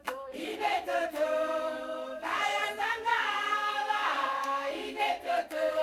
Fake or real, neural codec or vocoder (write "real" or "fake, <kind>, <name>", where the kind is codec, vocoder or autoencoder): fake, codec, SNAC